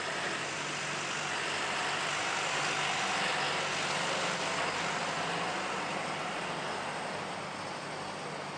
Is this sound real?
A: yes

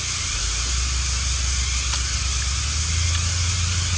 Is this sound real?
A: yes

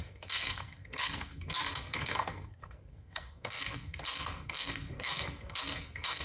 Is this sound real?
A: no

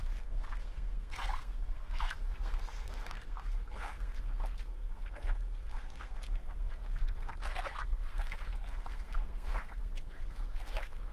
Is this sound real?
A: no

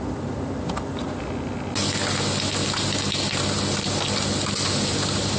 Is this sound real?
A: yes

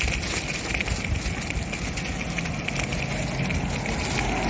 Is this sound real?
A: yes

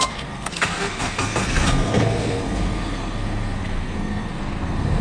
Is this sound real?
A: no